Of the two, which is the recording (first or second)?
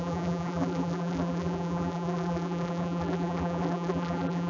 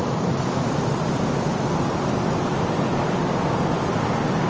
second